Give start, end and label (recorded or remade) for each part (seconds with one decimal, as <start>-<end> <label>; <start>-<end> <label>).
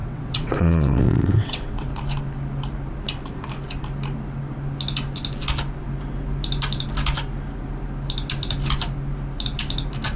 0.0-1.9 remade; 1.9-10.2 recorded